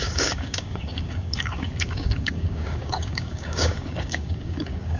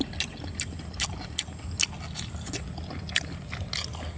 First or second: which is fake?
first